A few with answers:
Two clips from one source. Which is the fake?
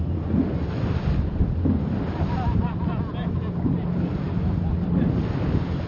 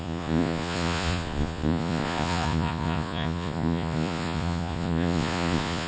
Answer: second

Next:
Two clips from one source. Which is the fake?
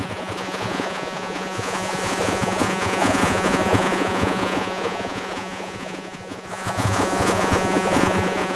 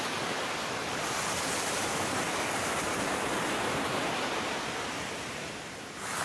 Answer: first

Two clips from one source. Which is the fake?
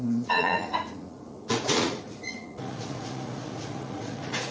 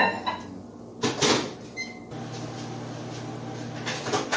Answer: first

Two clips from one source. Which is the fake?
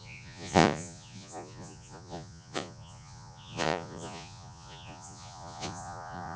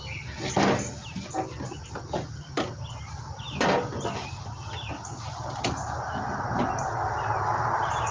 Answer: first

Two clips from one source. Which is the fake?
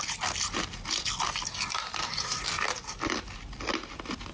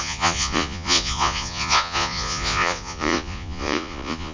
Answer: second